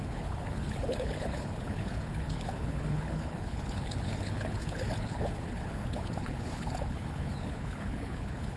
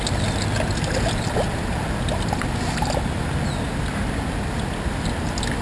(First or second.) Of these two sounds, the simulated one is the first